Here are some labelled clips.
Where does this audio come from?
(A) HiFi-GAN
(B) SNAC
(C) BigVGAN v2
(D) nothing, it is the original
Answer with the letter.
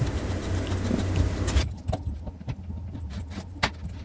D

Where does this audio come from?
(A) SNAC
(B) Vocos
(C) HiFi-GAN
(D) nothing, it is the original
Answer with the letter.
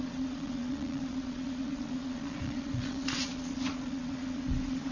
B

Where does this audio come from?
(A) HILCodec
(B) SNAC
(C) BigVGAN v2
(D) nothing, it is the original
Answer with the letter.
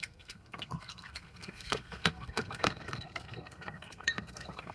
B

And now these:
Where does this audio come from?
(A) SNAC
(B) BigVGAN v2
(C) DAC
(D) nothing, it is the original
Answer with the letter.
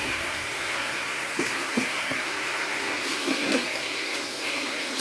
A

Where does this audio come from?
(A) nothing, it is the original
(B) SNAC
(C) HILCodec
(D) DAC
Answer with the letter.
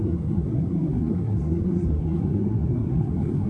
B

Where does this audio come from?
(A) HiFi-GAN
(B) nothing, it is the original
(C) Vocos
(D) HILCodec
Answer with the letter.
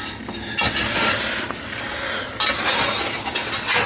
B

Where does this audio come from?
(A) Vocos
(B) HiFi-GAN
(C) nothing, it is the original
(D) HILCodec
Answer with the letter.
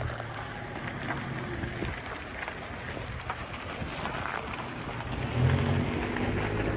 C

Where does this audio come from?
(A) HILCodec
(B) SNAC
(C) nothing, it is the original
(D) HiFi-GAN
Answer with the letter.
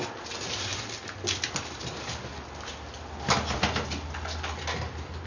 C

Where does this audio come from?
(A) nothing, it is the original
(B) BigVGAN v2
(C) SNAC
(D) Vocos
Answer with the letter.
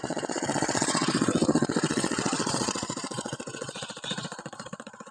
D